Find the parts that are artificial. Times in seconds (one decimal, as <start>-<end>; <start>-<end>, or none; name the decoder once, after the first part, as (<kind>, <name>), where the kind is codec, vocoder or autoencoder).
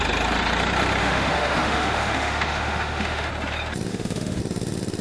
1.0-3.3 (autoencoder, DAC-VAE); 3.9-4.4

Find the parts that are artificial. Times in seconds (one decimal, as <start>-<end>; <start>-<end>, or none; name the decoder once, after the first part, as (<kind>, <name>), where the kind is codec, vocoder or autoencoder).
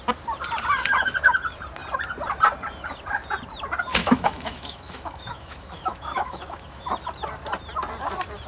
4.0-6.8 (autoencoder, DAC-VAE)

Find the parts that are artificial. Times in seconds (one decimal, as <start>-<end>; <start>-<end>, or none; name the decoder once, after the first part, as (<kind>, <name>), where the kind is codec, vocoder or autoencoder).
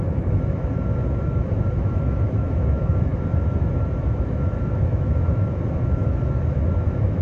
0.0-7.2 (autoencoder, DAC-VAE)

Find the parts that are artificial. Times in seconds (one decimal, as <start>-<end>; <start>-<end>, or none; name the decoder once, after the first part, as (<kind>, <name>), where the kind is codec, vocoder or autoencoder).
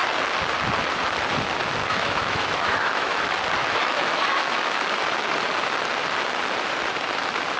1.8-3.2 (autoencoder, DAC-VAE); 3.6-5.0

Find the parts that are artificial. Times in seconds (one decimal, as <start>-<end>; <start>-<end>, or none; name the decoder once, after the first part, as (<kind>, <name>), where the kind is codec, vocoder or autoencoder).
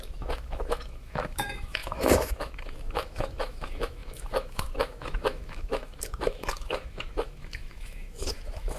0.0-8.8 (autoencoder, DAC-VAE)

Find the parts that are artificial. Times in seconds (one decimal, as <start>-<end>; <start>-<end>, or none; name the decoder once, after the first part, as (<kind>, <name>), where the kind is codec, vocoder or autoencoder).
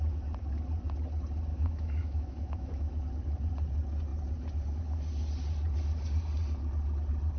1.5-2.9 (autoencoder, DAC-VAE)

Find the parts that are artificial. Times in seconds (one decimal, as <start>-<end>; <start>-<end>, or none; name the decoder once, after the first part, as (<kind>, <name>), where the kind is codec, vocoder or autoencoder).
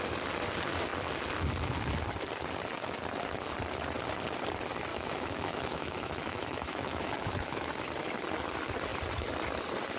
4.9-7.7 (autoencoder, DAC-VAE)